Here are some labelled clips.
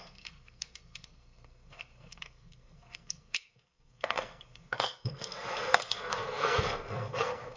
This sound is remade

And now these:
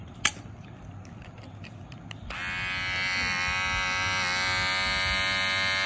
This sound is recorded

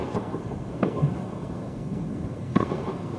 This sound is remade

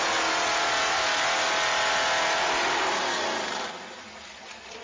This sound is recorded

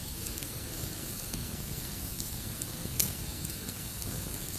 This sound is remade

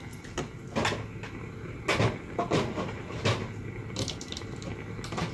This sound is recorded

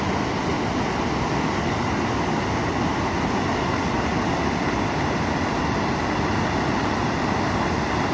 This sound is recorded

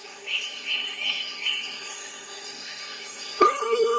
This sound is remade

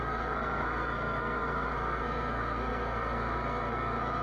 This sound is remade